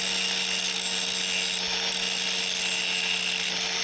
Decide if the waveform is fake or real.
real